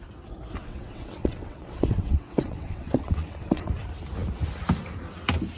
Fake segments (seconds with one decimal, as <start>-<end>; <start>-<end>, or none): 0.6-3.7